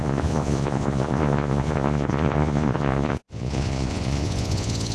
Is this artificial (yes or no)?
yes